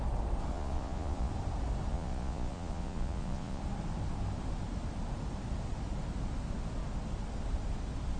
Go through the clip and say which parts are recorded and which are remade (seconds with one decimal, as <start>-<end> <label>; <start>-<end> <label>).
0.0-0.5 recorded; 0.5-1.3 remade; 1.3-1.9 recorded; 1.9-3.6 remade; 3.6-8.2 recorded